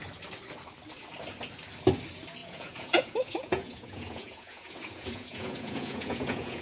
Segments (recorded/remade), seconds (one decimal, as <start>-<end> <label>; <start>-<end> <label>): 0.0-2.4 recorded; 2.4-6.6 remade